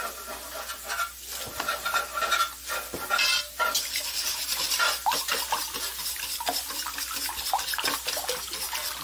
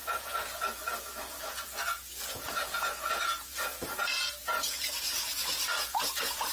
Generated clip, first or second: second